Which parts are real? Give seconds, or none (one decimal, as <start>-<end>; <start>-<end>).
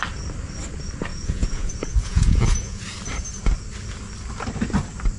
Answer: 0.0-1.1; 2.8-5.2